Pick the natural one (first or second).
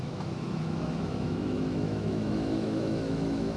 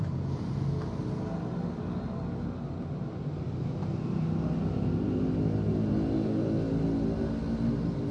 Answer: second